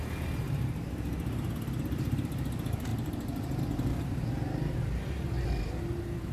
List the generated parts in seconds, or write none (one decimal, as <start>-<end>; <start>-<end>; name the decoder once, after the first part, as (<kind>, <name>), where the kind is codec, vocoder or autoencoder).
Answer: 2.9-3.6 (vocoder, BigVGAN v2)